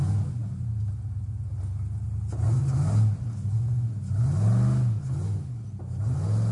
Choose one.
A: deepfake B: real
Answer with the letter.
B